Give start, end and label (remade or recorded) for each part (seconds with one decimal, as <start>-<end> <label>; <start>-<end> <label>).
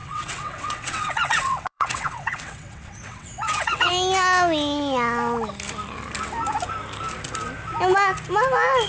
0.0-3.9 remade; 3.9-8.9 recorded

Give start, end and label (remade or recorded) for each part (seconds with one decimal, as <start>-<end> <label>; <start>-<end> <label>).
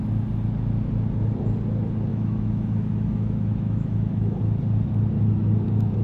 0.0-2.1 recorded; 2.1-4.4 remade; 4.4-6.0 recorded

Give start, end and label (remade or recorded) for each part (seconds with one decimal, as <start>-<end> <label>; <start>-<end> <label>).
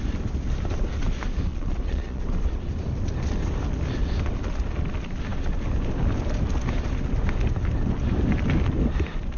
0.0-1.5 recorded; 1.5-2.2 remade; 2.2-9.4 recorded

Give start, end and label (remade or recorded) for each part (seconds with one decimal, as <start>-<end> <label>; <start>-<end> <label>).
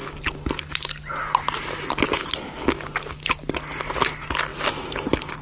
0.0-5.4 recorded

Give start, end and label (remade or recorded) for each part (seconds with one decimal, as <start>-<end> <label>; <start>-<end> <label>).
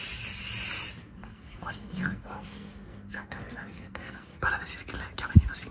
0.0-1.0 recorded; 1.0-4.4 remade; 4.4-5.7 recorded